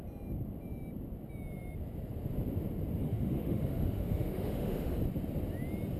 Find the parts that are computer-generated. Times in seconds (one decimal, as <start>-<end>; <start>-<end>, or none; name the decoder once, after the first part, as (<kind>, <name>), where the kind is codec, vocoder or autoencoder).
3.0-4.9 (autoencoder, DAC-VAE)

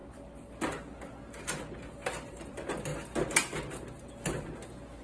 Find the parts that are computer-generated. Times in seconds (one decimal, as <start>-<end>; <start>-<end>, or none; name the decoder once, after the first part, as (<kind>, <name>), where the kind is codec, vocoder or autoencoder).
none